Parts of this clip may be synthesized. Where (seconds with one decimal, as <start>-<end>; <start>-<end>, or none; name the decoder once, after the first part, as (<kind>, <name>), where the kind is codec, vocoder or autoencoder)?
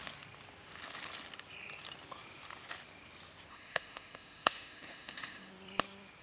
3.5-5.5 (autoencoder, DAC-VAE)